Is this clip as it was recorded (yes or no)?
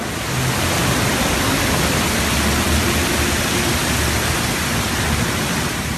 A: yes